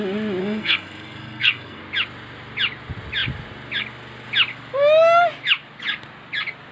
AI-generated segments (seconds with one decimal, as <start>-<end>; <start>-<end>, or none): 0.4-1.8